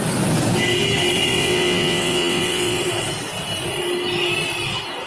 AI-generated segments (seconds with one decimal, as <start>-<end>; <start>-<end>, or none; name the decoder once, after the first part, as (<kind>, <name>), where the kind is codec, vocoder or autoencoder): 1.3-2.8 (vocoder, WaveNeXt)